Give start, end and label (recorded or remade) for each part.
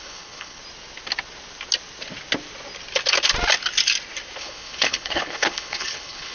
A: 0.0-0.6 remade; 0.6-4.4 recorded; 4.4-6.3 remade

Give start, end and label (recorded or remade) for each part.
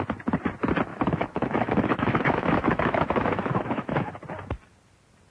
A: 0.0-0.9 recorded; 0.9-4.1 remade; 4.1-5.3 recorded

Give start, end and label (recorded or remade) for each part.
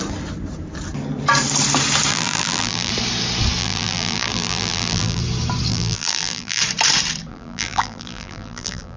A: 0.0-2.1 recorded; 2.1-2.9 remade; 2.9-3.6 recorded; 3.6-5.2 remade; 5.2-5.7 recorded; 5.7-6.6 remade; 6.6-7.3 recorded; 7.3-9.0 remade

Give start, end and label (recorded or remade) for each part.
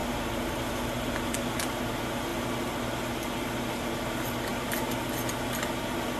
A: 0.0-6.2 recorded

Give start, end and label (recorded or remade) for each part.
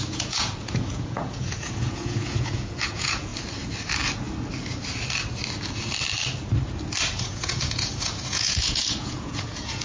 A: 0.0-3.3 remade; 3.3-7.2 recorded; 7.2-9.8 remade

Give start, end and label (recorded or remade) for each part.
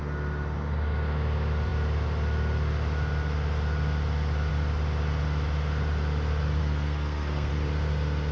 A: 0.0-6.6 recorded; 6.6-7.5 remade; 7.5-8.3 recorded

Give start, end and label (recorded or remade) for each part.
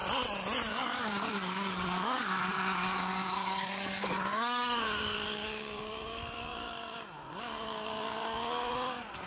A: 0.0-0.7 recorded; 0.7-9.3 remade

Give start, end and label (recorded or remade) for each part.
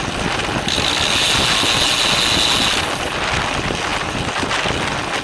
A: 0.0-5.2 recorded